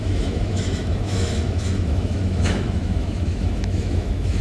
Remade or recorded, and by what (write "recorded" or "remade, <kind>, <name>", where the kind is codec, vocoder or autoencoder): remade, autoencoder, DAC-VAE